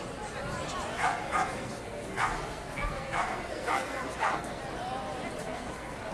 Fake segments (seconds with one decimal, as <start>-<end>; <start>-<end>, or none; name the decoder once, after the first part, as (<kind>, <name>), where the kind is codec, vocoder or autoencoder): 0.9-4.6 (codec, SNAC); 5.4-6.1